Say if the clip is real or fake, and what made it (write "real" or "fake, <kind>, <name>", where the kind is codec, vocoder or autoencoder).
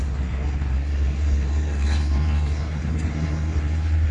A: fake, codec, SNAC